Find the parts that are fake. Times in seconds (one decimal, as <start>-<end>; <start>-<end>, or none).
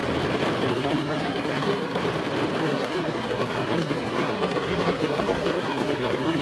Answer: 0.7-2.0; 2.6-6.4